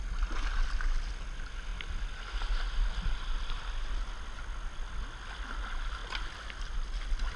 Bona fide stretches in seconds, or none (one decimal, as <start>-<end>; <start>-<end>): 0.0-7.4